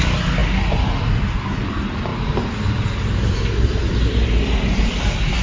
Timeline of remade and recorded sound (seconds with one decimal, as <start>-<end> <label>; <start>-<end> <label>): 0.0-2.1 recorded; 2.1-5.0 remade; 5.0-5.4 recorded